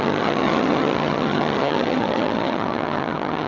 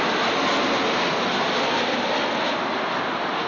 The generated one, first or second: first